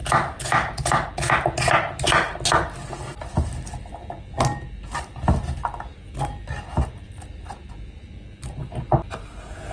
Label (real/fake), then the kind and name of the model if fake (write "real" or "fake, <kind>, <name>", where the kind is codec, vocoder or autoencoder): real